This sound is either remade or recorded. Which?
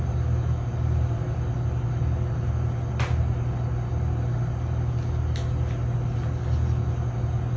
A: recorded